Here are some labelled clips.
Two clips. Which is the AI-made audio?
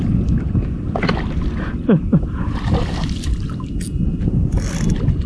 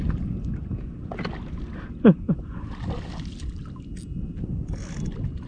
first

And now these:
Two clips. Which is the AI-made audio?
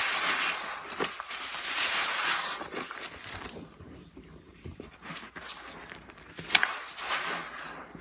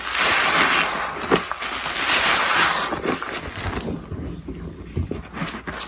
first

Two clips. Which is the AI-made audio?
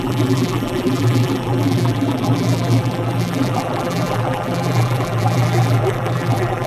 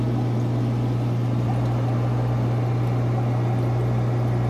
first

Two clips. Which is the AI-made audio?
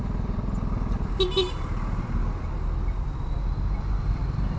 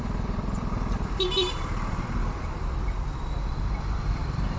second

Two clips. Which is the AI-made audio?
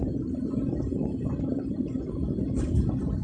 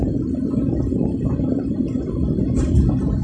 first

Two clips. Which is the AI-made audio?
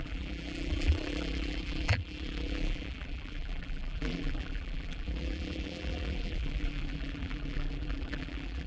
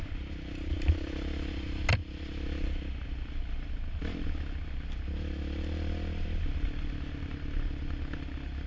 first